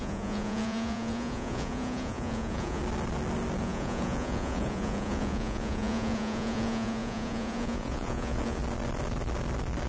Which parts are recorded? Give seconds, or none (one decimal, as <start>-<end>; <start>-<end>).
2.8-3.6; 8.6-9.9